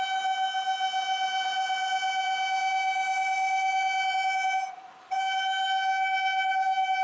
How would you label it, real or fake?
real